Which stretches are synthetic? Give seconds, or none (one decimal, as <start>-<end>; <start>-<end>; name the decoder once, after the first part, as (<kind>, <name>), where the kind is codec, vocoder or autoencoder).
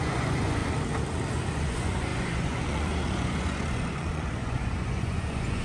0.0-0.6 (vocoder, Vocos); 1.3-5.6